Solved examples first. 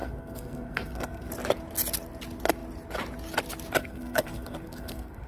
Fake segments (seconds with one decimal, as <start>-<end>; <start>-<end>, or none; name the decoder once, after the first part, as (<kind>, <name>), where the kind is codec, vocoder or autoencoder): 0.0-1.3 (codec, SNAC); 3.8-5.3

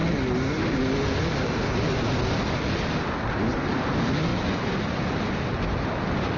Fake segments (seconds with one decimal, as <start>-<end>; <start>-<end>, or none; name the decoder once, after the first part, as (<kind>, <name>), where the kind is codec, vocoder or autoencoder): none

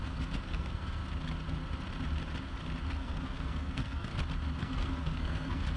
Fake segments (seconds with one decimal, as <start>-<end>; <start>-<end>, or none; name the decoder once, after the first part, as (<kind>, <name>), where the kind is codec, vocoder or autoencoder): 0.0-1.0 (codec, SNAC); 2.9-4.1; 4.6-5.8